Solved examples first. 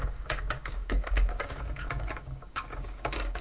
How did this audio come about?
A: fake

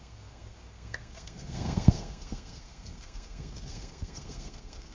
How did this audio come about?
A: fake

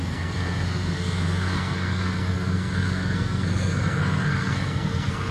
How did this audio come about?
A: fake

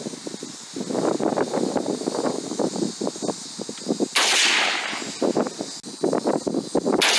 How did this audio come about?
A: real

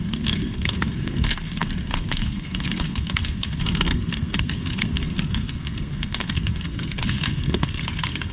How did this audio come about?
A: fake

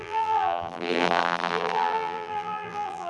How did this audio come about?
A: fake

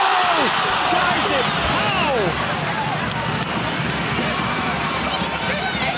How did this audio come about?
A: real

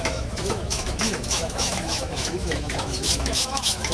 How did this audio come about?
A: fake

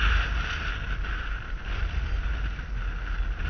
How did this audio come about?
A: real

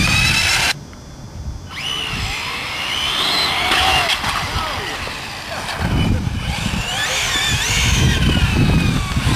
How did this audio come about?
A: real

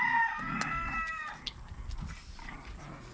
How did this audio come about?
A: real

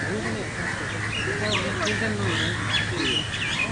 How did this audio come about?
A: real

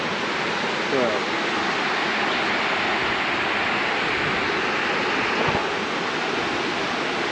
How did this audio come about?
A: real